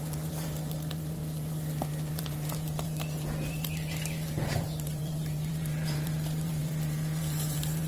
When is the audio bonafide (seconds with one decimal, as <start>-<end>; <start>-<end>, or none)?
none